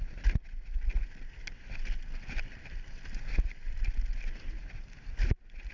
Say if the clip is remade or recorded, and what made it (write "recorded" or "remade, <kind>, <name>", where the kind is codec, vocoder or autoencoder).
recorded